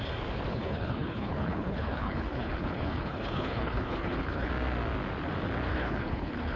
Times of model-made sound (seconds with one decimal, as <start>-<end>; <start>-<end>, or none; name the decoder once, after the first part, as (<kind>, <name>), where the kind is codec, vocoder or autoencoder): 0.5-4.5 (codec, HILCodec); 5.7-6.6